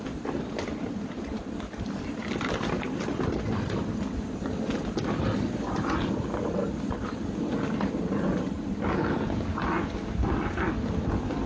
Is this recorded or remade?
recorded